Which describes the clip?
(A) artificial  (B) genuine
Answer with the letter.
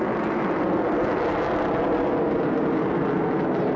B